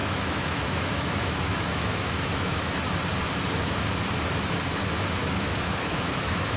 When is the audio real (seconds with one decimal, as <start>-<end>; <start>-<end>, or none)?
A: 2.7-5.2